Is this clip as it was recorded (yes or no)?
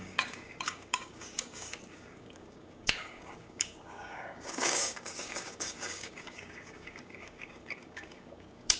no